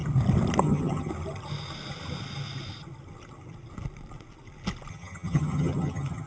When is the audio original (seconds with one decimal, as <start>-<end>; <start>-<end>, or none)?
0.0-0.6; 1.1-4.9